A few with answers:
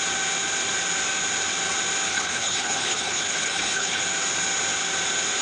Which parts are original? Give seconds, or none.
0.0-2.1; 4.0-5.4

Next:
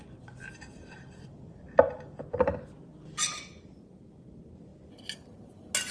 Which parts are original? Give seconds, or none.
0.0-5.9

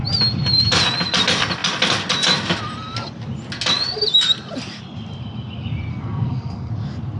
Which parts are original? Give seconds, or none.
0.0-5.9; 6.7-7.2